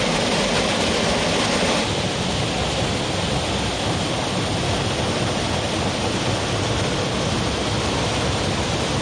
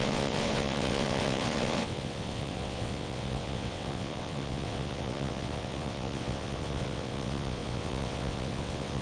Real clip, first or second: first